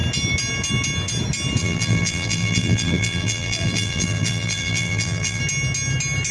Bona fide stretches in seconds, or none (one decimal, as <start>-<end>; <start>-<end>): 0.0-1.6; 5.4-6.3